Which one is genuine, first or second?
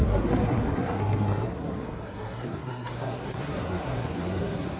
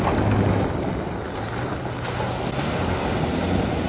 second